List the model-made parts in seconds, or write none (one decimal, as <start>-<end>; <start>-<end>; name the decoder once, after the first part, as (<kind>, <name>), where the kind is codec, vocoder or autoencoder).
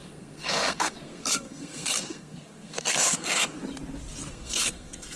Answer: 0.0-3.6 (codec, SNAC); 4.3-5.2